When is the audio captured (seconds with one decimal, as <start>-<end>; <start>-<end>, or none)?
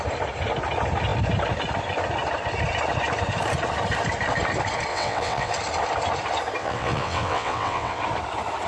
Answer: 0.0-4.9; 5.5-6.6; 8.0-8.7